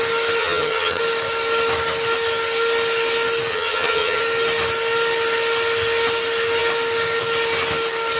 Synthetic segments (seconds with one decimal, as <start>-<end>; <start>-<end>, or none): 0.4-1.0; 3.5-4.2